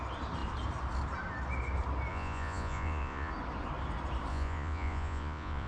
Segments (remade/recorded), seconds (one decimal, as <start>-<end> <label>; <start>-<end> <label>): 0.0-2.1 recorded; 2.1-3.3 remade; 3.3-4.3 recorded; 4.3-5.7 remade